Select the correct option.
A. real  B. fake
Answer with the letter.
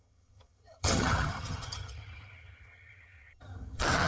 B